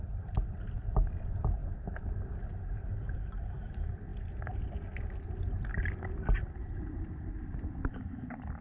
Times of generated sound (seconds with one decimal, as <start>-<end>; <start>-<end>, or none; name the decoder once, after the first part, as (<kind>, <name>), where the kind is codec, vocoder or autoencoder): none